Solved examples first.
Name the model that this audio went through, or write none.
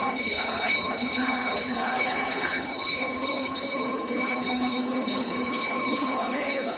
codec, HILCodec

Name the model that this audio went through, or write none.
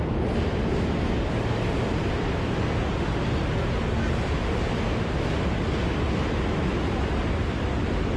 none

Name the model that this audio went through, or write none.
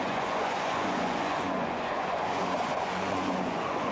vocoder, Vocos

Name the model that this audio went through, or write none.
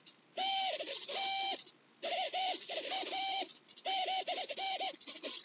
none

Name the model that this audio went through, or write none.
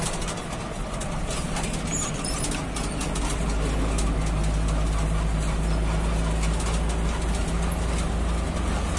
none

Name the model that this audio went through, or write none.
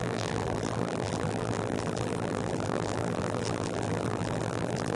vocoder, BigVGAN v2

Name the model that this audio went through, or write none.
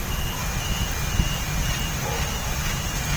none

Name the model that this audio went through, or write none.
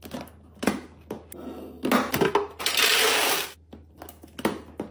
none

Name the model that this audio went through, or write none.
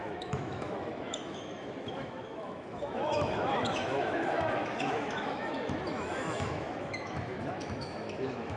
autoencoder, DAC-VAE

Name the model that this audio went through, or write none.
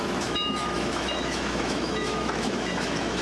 autoencoder, DAC-VAE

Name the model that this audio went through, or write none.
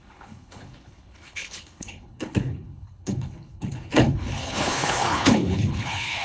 codec, HILCodec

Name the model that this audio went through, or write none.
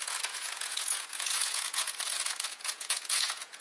vocoder, Vocos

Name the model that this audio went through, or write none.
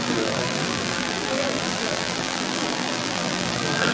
vocoder, BigVGAN v2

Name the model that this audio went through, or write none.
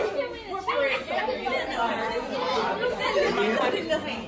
none